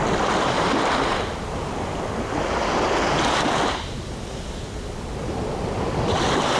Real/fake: real